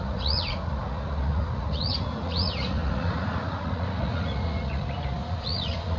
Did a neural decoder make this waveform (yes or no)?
yes